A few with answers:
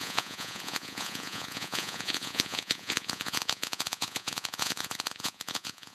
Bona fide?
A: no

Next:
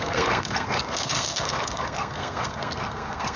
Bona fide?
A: no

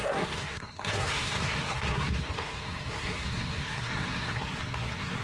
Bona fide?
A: no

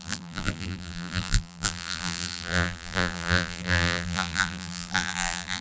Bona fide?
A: no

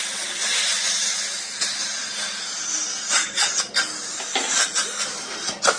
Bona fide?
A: yes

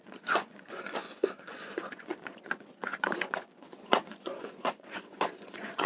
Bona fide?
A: no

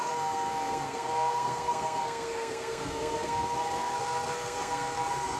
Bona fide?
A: no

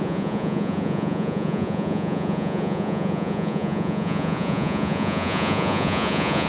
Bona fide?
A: no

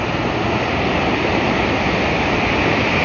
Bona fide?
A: yes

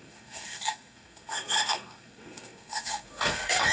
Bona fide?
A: no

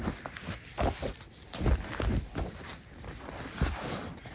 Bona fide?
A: yes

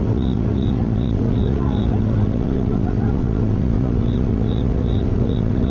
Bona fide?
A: no